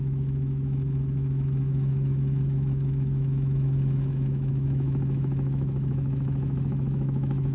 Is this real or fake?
fake